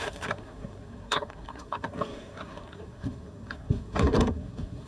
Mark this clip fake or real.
fake